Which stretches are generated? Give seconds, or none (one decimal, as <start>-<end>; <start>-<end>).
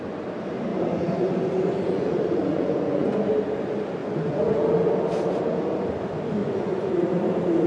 0.7-3.3; 4.0-4.9; 6.4-6.9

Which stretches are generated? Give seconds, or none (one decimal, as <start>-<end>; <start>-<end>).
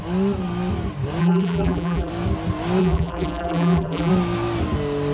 1.2-2.1; 2.8-4.1